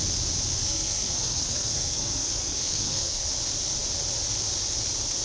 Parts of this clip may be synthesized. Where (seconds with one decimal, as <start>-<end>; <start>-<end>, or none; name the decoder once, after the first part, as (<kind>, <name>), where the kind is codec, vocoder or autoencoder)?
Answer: 0.6-3.3 (codec, SNAC)